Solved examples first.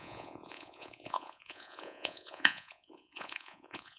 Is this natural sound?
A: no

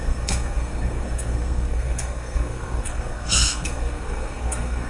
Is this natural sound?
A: no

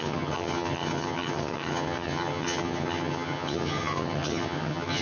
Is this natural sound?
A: no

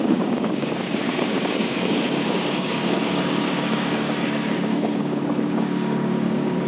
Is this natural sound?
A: no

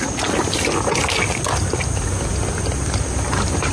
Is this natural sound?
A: yes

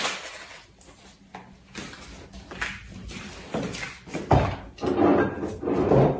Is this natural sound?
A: yes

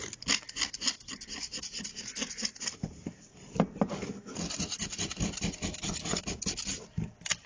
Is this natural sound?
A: yes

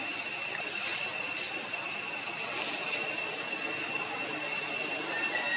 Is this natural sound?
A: yes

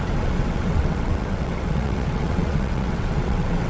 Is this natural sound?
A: no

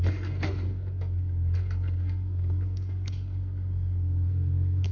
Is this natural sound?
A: no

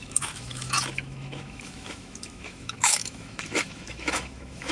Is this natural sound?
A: no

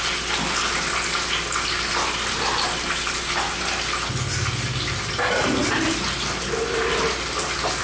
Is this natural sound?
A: yes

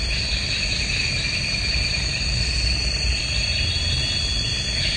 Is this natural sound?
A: yes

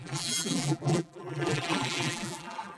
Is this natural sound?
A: no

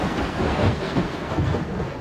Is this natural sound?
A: no